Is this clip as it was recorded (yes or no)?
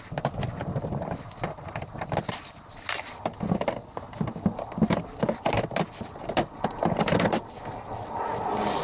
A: yes